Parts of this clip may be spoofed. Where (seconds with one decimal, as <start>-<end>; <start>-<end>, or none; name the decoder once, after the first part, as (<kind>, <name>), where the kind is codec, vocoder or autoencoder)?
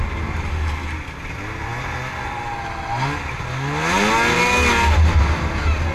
none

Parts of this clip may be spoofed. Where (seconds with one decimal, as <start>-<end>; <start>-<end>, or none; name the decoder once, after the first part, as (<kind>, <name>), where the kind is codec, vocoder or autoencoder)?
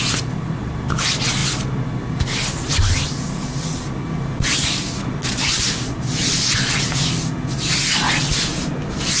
none